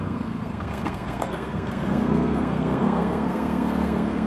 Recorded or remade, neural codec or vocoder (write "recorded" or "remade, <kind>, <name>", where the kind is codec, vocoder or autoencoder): remade, codec, SNAC